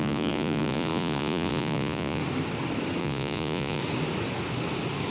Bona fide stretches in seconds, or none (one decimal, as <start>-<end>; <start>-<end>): 2.2-3.0; 3.8-5.1

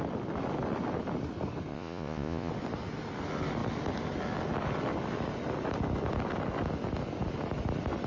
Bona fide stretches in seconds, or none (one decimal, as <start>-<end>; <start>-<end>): 0.0-1.7; 2.5-8.1